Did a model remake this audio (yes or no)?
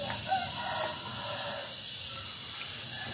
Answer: no